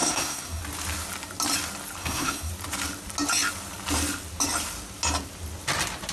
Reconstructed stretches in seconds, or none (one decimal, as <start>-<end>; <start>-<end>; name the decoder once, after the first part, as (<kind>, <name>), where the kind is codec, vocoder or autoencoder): 0.0-0.6 (codec, SNAC); 2.0-2.5